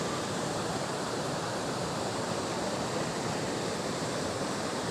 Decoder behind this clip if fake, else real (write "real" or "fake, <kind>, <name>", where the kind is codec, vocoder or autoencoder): fake, vocoder, BigVGAN v2